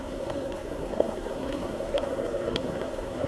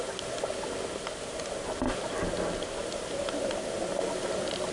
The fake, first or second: first